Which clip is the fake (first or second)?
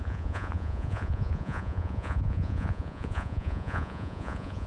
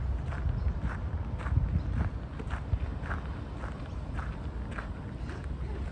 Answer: first